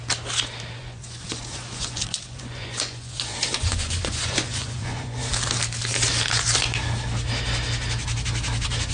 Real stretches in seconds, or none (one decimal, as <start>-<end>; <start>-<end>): 0.0-0.8; 5.3-8.9